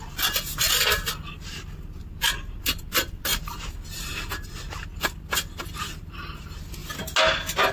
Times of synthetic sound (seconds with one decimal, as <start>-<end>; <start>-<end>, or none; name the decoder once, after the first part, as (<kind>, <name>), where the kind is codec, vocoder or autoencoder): none